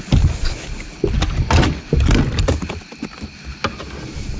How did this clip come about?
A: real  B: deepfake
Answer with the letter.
A